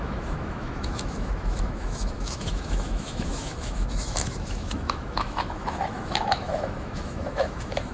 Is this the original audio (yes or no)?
no